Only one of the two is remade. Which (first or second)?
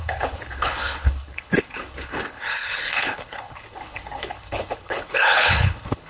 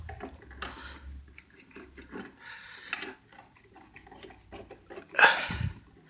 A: first